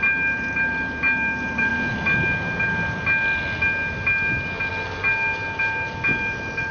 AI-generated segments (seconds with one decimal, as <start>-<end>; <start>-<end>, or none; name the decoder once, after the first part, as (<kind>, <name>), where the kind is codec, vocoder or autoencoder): none